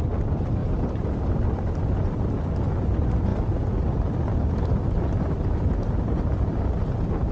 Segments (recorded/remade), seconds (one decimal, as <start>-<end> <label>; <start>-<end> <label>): 0.0-0.6 recorded; 0.6-1.7 remade; 1.7-7.3 recorded